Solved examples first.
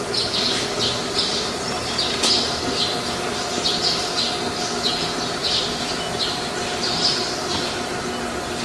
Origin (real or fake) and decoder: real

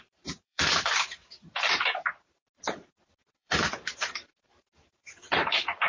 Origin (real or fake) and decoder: fake, vocoder, BigVGAN v2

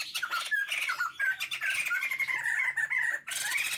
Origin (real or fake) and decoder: real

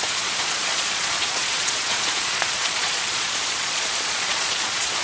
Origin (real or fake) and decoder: fake, vocoder, Vocos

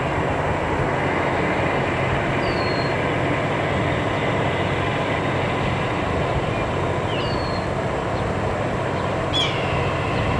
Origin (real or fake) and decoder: real